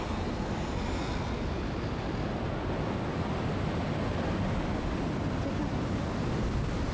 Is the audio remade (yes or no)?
no